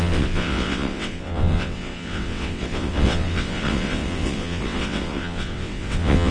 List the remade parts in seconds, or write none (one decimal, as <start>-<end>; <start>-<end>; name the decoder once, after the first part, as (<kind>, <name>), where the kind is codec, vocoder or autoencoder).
0.0-6.3 (vocoder, WaveNeXt)